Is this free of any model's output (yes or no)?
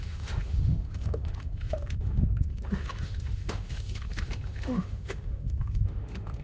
no